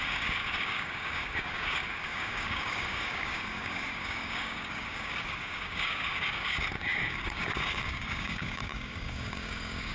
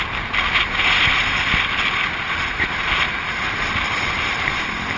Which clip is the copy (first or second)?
first